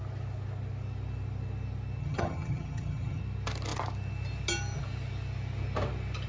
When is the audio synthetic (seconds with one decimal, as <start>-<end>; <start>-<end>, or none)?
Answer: 2.0-3.2